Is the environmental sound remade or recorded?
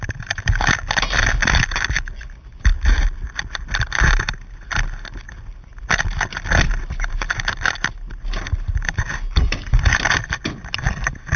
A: recorded